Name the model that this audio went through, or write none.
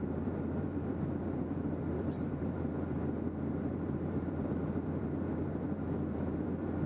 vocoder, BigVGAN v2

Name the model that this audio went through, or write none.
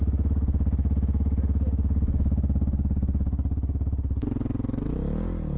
none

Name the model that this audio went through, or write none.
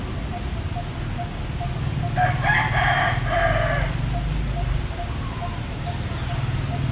none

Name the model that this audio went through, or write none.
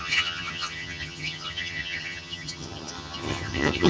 vocoder, HiFi-GAN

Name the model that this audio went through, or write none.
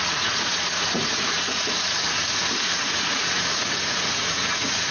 vocoder, Vocos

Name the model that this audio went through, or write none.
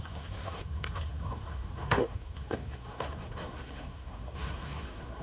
codec, SNAC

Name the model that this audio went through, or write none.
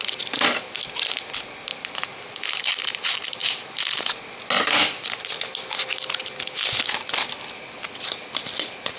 none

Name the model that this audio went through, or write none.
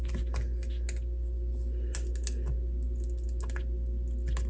none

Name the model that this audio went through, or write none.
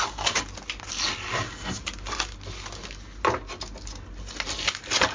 none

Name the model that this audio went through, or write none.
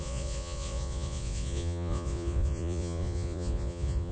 vocoder, Vocos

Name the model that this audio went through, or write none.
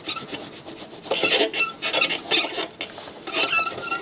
none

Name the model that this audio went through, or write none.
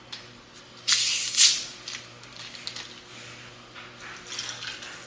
none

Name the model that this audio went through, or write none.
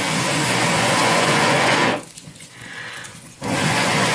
vocoder, Vocos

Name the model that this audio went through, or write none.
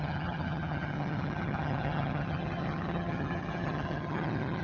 vocoder, HiFi-GAN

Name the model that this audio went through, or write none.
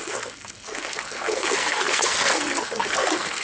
codec, SNAC